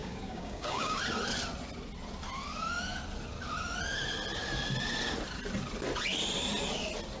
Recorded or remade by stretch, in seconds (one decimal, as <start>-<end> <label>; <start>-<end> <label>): 0.0-1.0 remade; 1.0-7.2 recorded